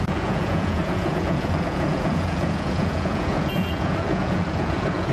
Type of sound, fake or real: fake